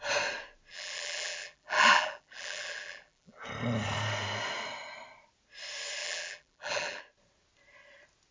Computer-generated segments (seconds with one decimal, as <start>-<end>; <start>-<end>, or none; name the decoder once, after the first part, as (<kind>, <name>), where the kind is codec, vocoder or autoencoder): 0.7-3.4 (vocoder, BigVGAN v2); 6.0-7.0